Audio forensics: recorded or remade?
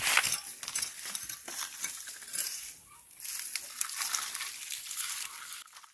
recorded